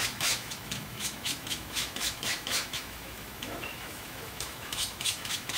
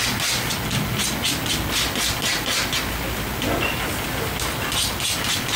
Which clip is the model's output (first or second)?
first